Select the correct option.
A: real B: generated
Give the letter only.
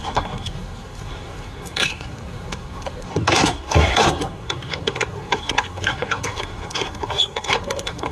B